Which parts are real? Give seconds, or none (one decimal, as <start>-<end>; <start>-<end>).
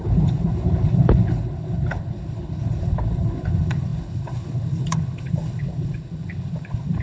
none